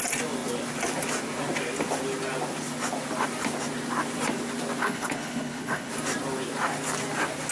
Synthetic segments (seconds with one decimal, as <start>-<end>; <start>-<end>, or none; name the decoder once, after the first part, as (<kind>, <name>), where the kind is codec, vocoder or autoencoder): 4.8-5.9 (codec, HILCodec)